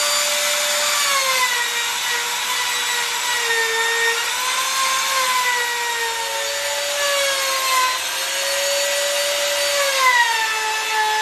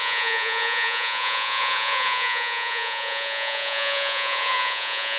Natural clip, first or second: first